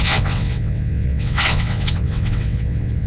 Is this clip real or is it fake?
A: fake